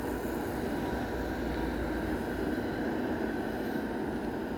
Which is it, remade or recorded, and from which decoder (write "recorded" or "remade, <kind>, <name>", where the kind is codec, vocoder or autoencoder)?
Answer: recorded